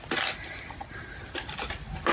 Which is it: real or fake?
real